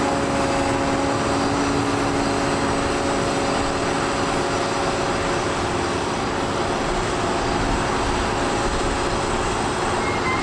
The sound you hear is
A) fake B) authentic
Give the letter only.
B